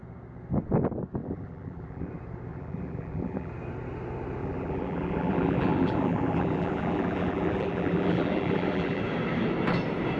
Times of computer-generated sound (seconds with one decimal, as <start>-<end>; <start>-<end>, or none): 1.2-2.1; 2.5-3.5; 4.4-9.0